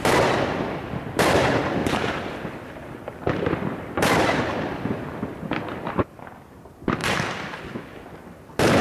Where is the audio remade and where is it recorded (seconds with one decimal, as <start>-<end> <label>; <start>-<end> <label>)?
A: 0.0-1.8 recorded; 1.8-6.2 remade; 6.2-7.0 recorded; 7.0-7.6 remade; 7.6-8.8 recorded